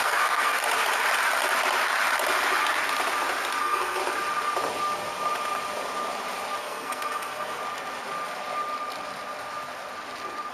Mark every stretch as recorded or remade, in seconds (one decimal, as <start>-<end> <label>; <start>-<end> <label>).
0.0-0.6 remade; 0.6-3.6 recorded; 3.6-4.0 remade; 4.0-6.6 recorded; 6.6-7.6 remade; 7.6-10.5 recorded